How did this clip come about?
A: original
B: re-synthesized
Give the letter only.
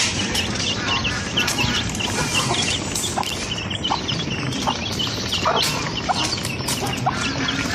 A